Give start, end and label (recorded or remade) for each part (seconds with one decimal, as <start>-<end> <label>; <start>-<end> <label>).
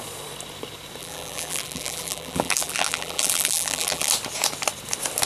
0.0-1.0 recorded; 1.0-4.1 remade; 4.1-5.2 recorded